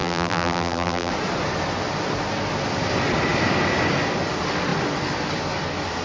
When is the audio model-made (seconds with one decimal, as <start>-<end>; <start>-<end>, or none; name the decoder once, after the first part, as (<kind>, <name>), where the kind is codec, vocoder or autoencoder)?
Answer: 0.0-1.1 (vocoder, BigVGAN v2)

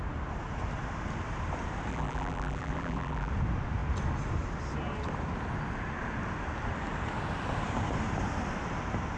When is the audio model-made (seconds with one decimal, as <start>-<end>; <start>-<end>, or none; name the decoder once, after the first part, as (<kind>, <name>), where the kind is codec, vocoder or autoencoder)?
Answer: 1.9-3.3 (vocoder, BigVGAN v2)

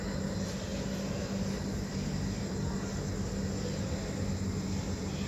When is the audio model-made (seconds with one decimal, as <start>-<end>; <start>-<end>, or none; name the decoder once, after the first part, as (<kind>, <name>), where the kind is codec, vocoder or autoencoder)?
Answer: none

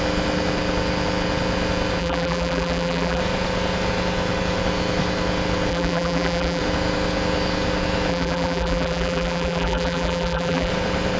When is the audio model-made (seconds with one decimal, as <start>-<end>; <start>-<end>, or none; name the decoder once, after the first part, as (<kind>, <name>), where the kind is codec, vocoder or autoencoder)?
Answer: 2.0-3.2 (vocoder, BigVGAN v2); 5.7-6.6; 8.1-10.7

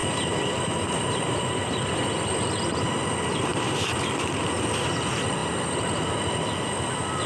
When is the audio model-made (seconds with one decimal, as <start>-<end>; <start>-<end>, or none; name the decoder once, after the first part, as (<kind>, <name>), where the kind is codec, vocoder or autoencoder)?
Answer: 0.0-2.6 (vocoder, BigVGAN v2); 3.5-4.9

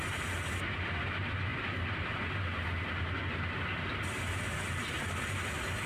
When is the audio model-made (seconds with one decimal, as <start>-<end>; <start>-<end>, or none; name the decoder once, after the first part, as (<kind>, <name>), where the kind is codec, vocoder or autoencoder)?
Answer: none